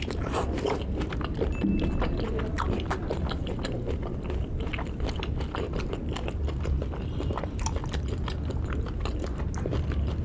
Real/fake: real